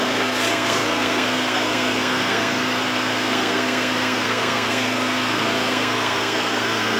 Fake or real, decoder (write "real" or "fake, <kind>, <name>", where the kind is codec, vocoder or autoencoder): fake, codec, SNAC